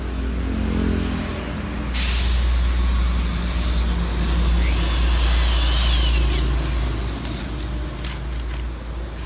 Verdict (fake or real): real